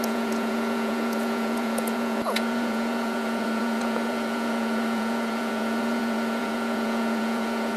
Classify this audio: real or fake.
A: fake